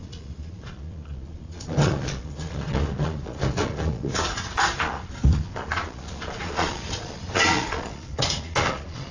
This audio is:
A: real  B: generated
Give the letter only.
B